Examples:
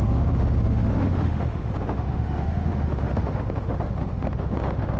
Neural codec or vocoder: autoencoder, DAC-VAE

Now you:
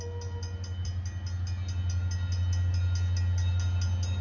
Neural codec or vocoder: none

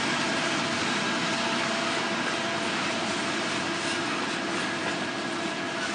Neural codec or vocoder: none